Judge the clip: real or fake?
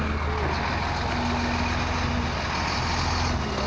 real